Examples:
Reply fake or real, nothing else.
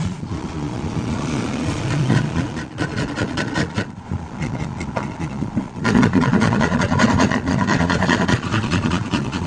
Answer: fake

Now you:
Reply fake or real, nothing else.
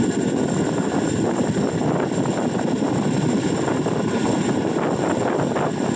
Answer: real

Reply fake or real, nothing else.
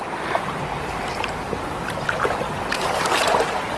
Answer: real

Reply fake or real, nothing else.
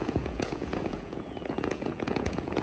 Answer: fake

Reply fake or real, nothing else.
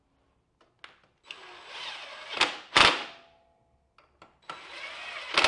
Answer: real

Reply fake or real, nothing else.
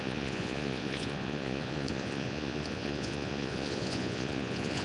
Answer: fake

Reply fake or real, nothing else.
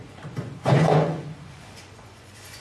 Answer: fake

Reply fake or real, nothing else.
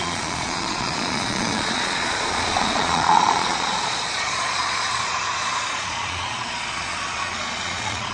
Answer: fake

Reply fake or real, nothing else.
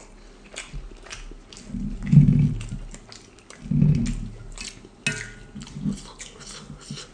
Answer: real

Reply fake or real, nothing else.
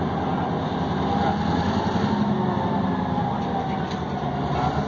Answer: real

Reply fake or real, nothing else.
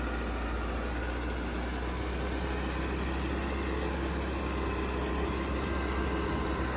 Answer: real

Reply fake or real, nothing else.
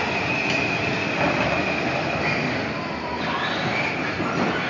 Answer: real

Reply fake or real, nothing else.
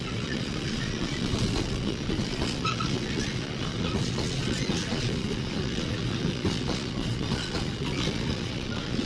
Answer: fake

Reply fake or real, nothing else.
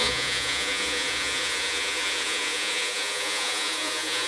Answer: fake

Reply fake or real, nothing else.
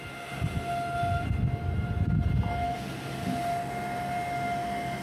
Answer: real